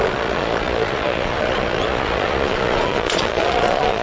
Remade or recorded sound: remade